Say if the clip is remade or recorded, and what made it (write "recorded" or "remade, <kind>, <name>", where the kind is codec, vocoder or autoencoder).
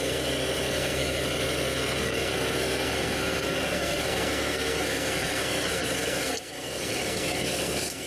remade, codec, SNAC